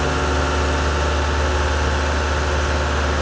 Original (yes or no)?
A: yes